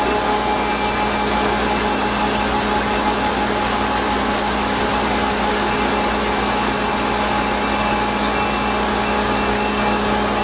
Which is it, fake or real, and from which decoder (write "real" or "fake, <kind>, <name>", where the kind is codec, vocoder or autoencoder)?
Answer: real